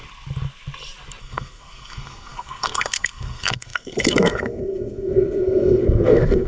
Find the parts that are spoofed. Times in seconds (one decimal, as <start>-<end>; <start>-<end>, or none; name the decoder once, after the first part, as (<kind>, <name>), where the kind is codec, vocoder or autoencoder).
1.2-6.5 (codec, SNAC)